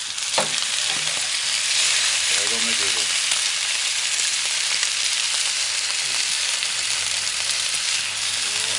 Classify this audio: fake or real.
real